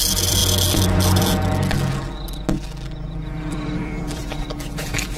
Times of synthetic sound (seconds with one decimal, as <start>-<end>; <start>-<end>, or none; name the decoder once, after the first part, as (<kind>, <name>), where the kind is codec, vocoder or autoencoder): 0.0-0.4 (vocoder, BigVGAN v2); 3.5-4.2